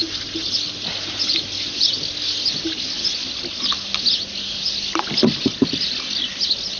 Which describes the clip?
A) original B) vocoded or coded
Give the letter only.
A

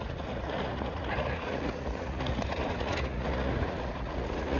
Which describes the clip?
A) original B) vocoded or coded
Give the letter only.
B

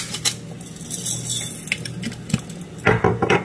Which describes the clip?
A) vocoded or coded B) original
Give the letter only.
B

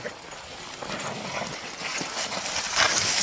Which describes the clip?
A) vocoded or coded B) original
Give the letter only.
B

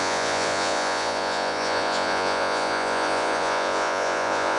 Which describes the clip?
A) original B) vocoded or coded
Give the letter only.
B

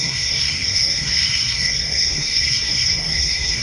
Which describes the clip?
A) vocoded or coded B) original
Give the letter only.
A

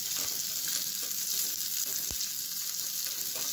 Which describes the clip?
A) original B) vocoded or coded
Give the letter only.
A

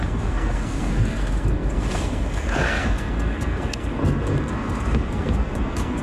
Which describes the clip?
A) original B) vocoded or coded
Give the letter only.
B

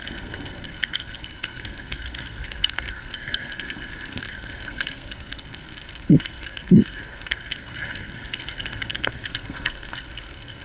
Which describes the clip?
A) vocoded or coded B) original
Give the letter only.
A